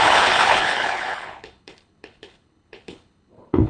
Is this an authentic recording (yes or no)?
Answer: no